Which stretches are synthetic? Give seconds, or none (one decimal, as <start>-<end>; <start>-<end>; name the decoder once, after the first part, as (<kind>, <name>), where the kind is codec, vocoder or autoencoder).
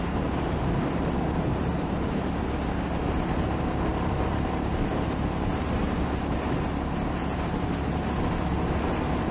1.5-2.4 (vocoder, BigVGAN v2); 3.9-5.8